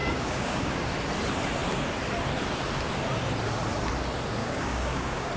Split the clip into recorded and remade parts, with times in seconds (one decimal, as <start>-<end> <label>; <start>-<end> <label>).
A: 0.0-0.7 remade; 0.7-4.4 recorded; 4.4-5.4 remade